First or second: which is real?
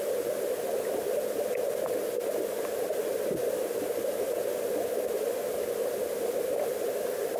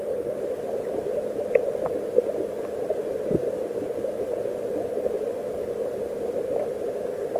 first